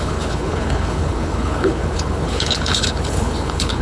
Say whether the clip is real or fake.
fake